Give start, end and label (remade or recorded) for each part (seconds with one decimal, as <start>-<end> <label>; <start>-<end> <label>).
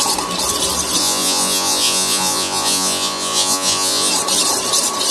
0.0-1.0 recorded; 1.0-4.1 remade; 4.1-5.1 recorded